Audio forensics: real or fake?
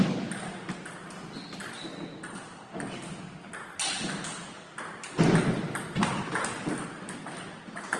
real